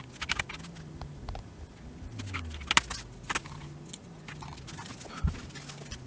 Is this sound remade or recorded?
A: recorded